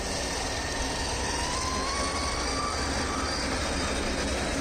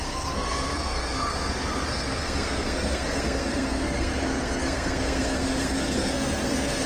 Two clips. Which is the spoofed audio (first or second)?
second